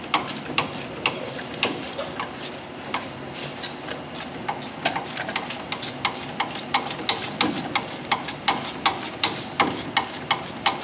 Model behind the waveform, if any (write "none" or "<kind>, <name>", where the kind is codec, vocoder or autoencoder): none